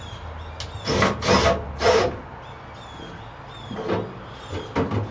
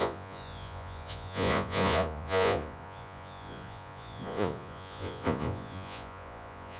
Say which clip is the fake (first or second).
second